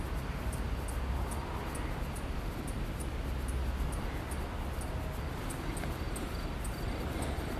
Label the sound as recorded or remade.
recorded